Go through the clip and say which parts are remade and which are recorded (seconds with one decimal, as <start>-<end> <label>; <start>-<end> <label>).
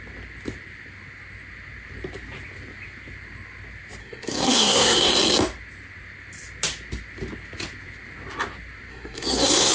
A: 0.0-4.0 recorded; 4.0-5.1 remade; 5.1-8.9 recorded; 8.9-9.7 remade